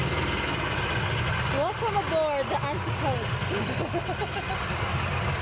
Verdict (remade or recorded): recorded